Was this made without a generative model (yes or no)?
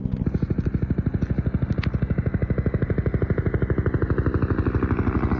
yes